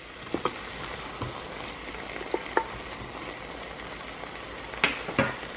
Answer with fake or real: real